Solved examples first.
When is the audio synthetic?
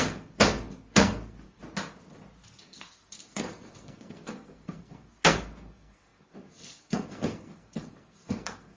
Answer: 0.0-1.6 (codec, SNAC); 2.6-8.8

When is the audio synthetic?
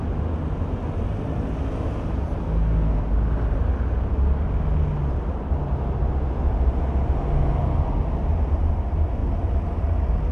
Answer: 2.4-3.0 (codec, SNAC)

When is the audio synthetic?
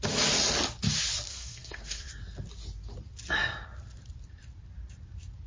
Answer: 1.3-2.1 (codec, SNAC)